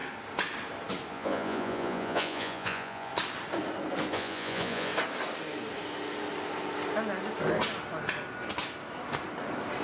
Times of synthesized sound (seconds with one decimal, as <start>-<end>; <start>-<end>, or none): 1.1-3.1; 4.1-4.9

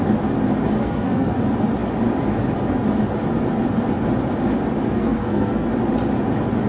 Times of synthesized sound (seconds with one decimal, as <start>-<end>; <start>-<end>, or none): 0.8-1.4; 4.9-5.7

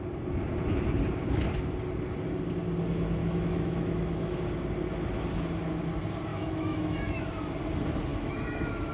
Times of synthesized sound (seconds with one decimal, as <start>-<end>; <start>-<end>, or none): 3.2-4.4; 6.3-7.2; 8.1-8.9

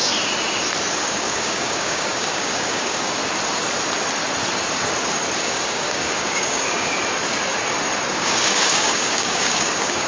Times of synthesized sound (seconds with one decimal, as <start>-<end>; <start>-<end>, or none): 0.9-3.2; 5.4-7.0; 8.1-10.1

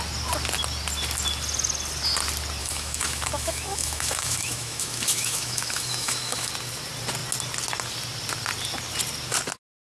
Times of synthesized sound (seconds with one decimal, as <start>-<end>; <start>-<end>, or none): 2.6-6.5

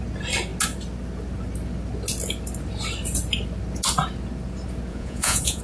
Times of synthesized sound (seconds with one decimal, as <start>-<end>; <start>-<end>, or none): 4.9-5.6

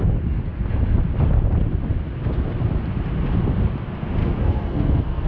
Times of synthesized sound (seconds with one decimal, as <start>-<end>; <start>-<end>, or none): 4.2-5.3